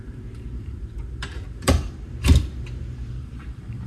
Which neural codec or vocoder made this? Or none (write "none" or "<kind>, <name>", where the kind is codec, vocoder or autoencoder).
vocoder, BigVGAN v2